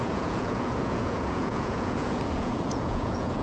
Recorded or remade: remade